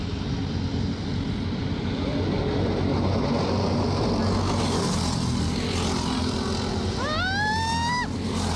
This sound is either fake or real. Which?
real